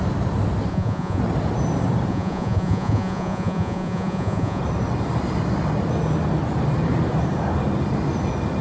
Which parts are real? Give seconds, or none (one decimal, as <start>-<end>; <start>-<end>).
0.0-0.7; 1.2-2.1; 4.6-8.6